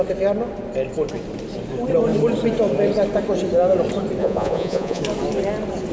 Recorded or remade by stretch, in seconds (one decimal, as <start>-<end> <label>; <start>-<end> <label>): 0.0-4.2 recorded; 4.2-5.0 remade; 5.0-5.9 recorded